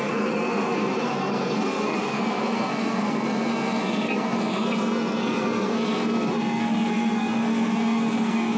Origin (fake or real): fake